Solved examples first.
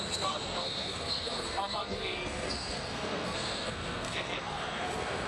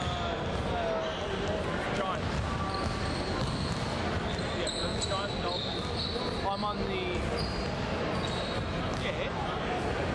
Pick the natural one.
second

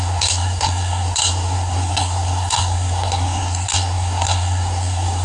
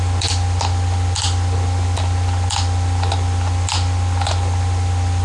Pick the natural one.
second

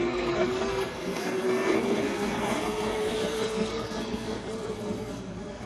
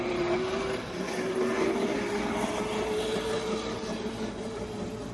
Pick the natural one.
second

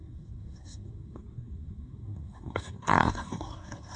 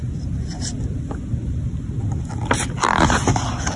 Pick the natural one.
second